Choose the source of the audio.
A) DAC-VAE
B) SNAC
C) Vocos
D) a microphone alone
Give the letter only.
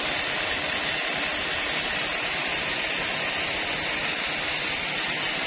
D